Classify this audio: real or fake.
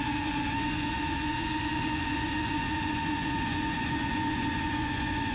fake